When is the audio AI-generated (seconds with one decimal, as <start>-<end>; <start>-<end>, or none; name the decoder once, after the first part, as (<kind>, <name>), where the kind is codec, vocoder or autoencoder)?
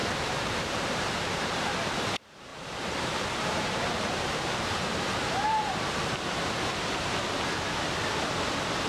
0.0-1.7 (vocoder, BigVGAN v2); 2.5-7.2